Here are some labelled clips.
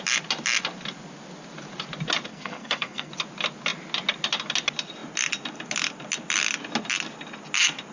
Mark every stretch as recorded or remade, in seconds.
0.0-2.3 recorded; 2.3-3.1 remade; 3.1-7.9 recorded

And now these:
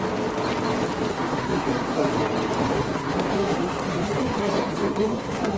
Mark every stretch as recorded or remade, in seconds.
0.0-1.1 recorded; 1.1-2.1 remade; 2.1-2.6 recorded; 2.6-5.6 remade

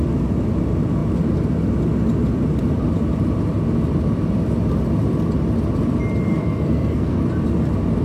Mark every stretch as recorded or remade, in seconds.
0.0-6.3 recorded; 6.3-7.2 remade; 7.2-8.0 recorded